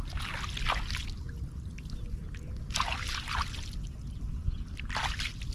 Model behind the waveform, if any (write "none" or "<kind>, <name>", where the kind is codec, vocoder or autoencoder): none